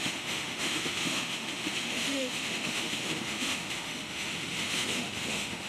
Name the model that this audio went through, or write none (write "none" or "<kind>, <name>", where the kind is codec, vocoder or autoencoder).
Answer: autoencoder, DAC-VAE